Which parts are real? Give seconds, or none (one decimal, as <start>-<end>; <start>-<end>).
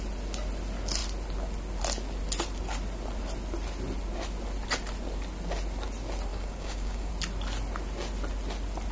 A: 0.0-6.3; 7.1-8.9